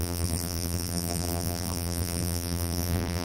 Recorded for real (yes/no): no